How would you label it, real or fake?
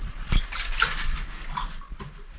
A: real